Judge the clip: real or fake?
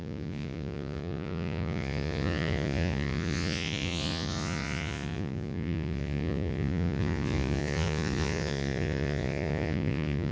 fake